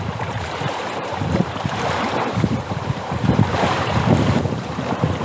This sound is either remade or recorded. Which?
remade